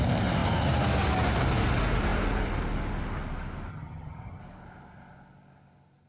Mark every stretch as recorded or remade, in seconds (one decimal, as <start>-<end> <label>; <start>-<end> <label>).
0.0-3.7 recorded; 3.7-4.4 remade; 4.4-6.1 recorded